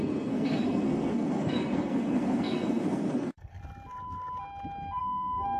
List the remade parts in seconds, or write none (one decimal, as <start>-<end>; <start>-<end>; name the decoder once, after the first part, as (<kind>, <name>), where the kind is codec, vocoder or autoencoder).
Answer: 0.0-3.6 (codec, SNAC); 5.0-5.6